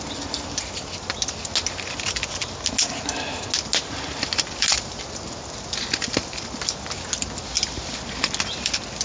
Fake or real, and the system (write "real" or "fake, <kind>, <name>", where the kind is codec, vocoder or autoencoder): real